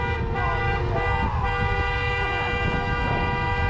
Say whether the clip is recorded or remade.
recorded